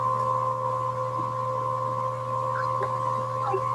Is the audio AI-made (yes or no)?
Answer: no